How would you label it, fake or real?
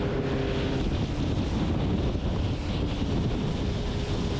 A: real